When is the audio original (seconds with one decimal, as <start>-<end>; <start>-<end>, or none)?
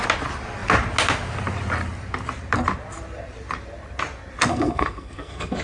0.0-4.5